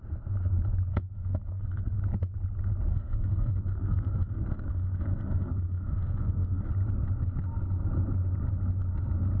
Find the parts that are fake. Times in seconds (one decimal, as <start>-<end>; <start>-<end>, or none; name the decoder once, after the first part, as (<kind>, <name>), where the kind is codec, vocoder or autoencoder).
0.9-2.0 (codec, SNAC); 2.9-6.7